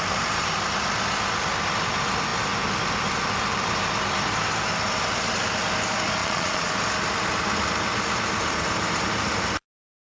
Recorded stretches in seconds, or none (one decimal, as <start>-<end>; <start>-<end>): 0.0-6.2; 6.7-10.1